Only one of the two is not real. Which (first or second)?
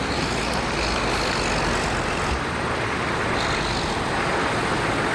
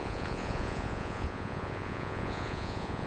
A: second